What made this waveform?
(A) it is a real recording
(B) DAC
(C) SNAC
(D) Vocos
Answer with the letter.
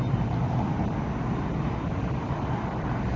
A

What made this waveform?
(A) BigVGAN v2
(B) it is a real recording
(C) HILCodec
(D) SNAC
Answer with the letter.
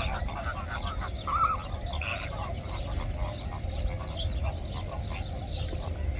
B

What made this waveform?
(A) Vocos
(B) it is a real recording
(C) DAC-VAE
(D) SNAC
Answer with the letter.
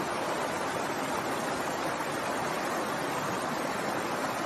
B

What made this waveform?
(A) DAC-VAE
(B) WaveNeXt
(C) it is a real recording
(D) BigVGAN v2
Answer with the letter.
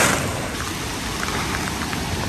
C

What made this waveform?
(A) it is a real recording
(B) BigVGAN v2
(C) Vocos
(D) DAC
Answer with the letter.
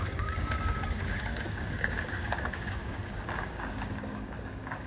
D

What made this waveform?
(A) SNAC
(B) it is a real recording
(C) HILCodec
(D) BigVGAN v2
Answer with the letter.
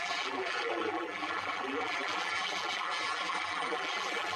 D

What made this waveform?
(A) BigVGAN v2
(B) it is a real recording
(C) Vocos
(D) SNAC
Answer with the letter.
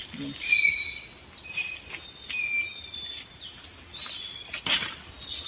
B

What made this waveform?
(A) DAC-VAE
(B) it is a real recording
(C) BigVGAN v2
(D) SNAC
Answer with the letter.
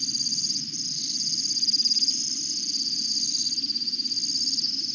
B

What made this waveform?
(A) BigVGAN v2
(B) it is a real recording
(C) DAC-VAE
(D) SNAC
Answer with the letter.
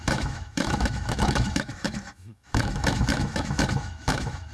C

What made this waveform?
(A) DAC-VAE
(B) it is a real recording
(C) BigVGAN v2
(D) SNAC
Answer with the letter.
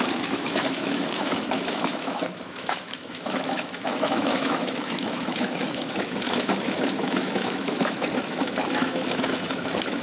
A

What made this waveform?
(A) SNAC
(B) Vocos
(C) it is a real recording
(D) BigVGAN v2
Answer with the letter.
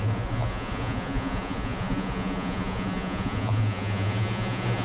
B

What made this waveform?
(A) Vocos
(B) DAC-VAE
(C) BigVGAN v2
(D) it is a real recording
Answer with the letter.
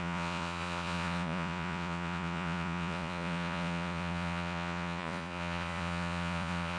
A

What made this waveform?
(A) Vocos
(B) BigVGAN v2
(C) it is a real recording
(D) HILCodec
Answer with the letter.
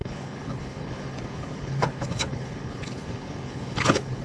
D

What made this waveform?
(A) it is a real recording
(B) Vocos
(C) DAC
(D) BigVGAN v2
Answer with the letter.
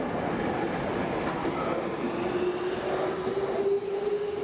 A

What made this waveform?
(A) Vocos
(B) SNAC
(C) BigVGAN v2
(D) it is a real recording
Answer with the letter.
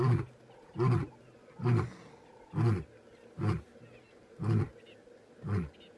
D